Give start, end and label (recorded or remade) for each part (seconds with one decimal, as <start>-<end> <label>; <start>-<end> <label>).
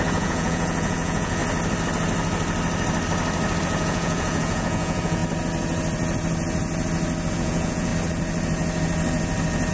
0.0-1.4 remade; 1.4-3.6 recorded; 3.6-5.2 remade; 5.2-7.3 recorded; 7.3-7.9 remade; 7.9-9.7 recorded